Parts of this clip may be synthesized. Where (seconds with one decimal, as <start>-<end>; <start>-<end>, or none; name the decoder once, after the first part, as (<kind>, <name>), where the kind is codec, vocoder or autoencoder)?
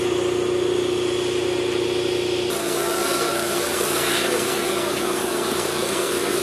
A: 2.6-6.4 (codec, SNAC)